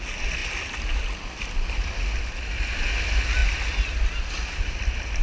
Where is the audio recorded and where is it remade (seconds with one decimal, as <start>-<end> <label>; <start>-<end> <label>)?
0.0-5.2 recorded